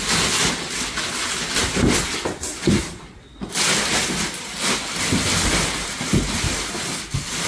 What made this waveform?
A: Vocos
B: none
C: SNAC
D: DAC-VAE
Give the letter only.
B